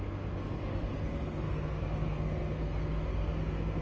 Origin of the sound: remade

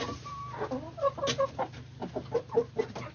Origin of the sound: recorded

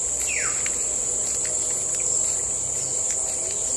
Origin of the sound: recorded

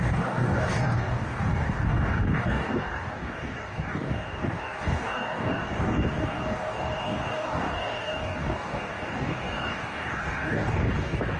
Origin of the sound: remade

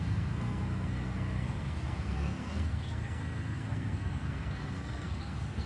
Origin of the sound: remade